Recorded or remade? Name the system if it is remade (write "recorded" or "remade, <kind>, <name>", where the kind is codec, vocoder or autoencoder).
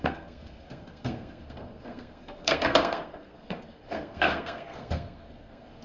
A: remade, codec, SNAC